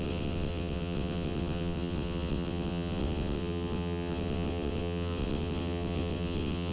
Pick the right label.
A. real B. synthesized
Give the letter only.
B